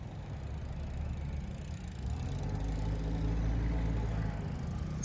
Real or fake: real